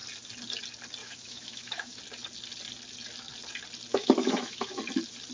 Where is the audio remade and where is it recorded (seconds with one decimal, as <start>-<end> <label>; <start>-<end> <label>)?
0.0-1.0 recorded; 1.0-2.0 remade; 2.0-3.9 recorded; 3.9-4.8 remade; 4.8-5.3 recorded